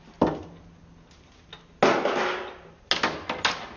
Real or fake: real